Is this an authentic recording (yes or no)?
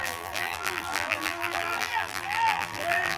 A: no